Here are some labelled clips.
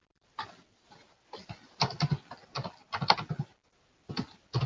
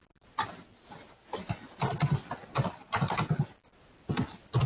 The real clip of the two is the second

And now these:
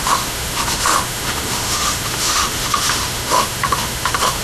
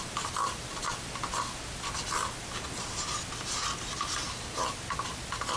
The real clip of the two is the second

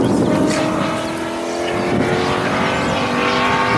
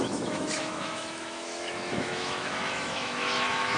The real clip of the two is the first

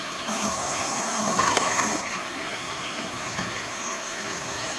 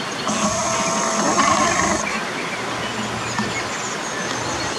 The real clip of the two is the second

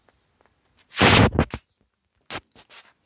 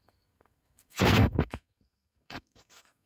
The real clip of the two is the first